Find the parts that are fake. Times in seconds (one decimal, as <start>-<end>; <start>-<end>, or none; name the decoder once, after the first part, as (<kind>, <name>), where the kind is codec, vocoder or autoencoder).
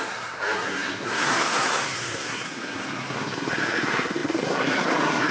0.0-5.3 (codec, SNAC)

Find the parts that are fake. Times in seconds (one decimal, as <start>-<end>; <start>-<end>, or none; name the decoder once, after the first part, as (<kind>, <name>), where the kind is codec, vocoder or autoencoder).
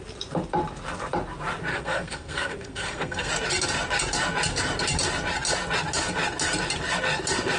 1.7-3.3 (codec, SNAC)